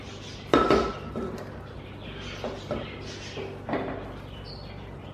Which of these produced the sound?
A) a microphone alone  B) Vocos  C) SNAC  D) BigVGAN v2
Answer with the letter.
A